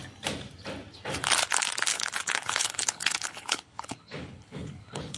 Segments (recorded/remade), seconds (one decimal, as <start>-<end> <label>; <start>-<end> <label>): 0.0-1.9 recorded; 1.9-5.2 remade